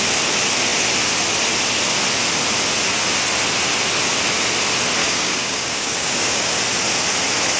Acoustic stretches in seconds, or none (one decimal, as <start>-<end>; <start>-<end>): 0.0-5.0; 6.5-7.6